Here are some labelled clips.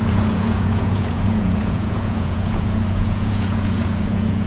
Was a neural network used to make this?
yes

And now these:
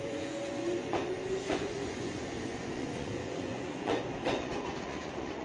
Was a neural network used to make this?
yes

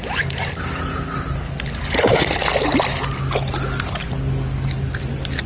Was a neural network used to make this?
no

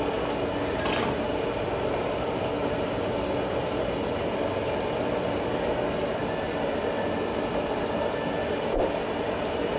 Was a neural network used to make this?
no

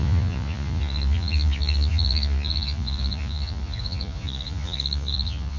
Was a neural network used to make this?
yes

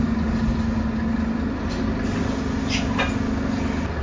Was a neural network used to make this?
no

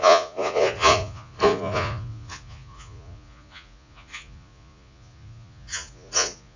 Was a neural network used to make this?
yes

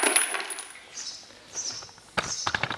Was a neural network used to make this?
no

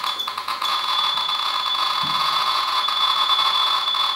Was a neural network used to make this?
yes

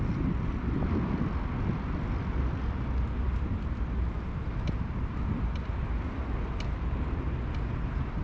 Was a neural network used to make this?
no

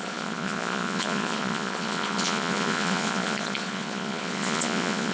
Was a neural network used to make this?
yes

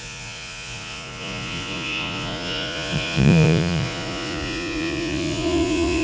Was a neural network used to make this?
yes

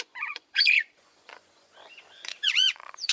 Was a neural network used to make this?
yes